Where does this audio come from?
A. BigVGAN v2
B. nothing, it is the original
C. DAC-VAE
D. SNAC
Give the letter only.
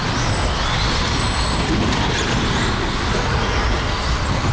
B